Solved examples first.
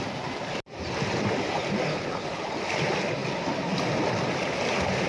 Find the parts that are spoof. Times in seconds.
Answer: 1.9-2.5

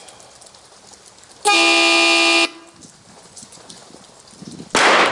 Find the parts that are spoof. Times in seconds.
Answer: 3.1-3.8

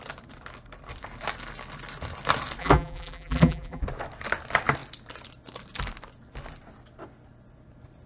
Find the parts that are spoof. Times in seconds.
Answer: 2.6-3.8